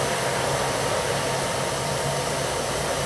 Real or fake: real